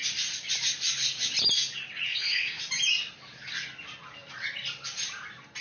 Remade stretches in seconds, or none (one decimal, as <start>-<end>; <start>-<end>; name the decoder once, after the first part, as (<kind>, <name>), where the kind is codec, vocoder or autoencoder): 2.1-2.6 (codec, ZipCodec)